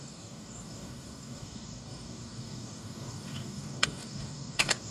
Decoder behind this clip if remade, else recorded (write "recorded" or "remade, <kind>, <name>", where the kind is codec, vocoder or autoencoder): remade, codec, DAC